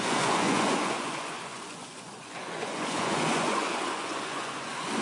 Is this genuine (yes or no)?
no